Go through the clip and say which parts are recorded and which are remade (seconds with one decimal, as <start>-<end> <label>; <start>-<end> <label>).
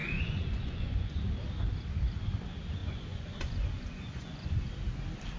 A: 0.0-1.2 remade; 1.2-2.8 recorded; 2.8-4.5 remade; 4.5-5.4 recorded